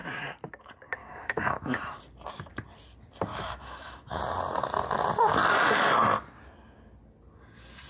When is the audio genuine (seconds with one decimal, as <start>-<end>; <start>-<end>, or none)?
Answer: 0.0-1.0; 2.0-3.3; 4.2-7.9

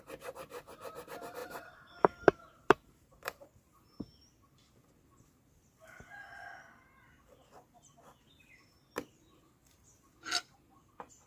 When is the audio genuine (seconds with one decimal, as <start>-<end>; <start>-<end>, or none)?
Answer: 0.0-1.4; 3.5-11.3